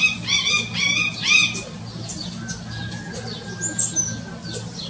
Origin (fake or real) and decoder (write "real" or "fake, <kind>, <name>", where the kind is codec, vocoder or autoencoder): real